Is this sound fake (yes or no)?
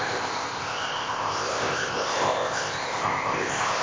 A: yes